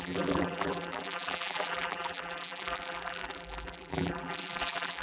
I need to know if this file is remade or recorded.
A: remade